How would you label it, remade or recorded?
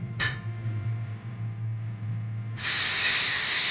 recorded